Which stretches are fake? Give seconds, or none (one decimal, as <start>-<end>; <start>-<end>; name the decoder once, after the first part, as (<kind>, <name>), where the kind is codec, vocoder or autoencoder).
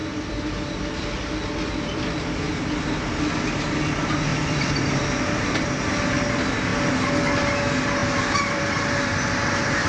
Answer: 0.0-0.9 (vocoder, BigVGAN v2); 4.3-5.6; 8.0-9.9